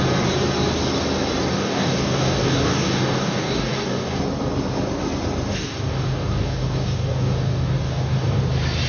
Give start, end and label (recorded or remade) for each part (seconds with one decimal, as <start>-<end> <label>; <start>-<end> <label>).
0.0-1.4 recorded; 1.4-4.2 remade; 4.2-5.5 recorded; 5.5-8.4 remade; 8.4-8.9 recorded